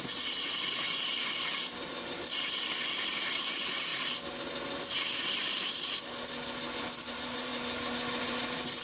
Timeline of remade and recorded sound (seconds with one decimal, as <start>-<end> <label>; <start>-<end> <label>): 0.0-3.9 remade; 3.9-5.5 recorded; 5.5-6.0 remade; 6.0-7.0 recorded; 7.0-7.5 remade; 7.5-8.2 recorded; 8.2-8.8 remade